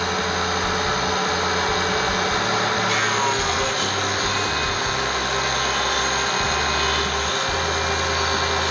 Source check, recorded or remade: recorded